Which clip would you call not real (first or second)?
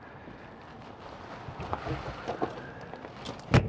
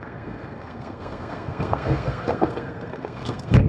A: second